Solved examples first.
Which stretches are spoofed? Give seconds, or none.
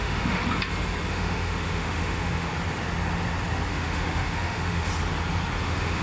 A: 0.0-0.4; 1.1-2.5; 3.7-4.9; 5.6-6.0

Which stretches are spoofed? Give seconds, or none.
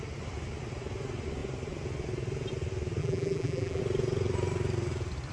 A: 3.0-3.8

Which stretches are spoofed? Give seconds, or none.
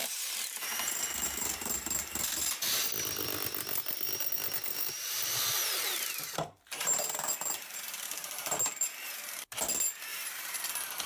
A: 0.0-2.9; 4.7-8.5; 10.1-10.6